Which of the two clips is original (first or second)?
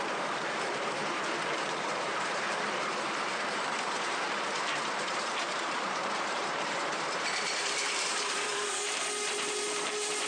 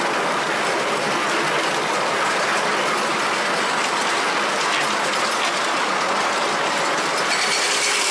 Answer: second